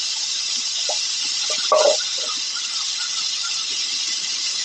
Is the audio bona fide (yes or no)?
yes